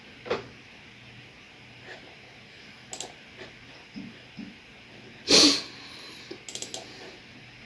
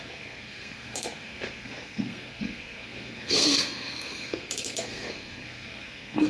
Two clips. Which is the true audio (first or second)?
first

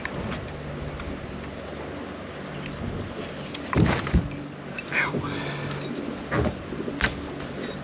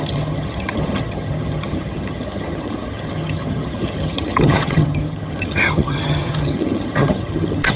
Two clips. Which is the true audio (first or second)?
first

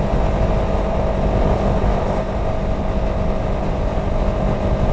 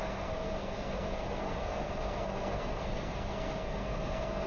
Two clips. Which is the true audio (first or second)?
first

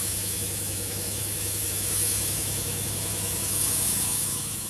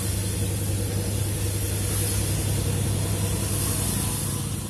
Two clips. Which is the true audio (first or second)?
second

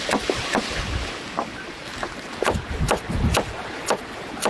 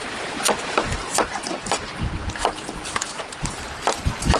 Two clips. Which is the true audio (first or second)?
first